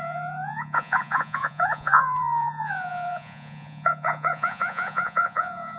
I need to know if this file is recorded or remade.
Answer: remade